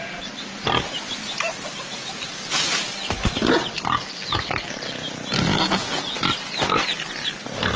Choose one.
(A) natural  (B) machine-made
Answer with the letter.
A